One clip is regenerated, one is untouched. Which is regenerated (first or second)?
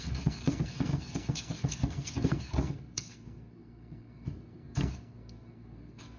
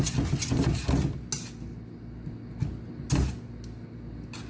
first